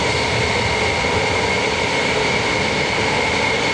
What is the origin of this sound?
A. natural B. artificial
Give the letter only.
A